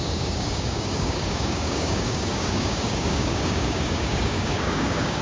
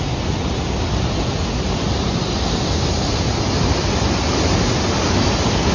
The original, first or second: second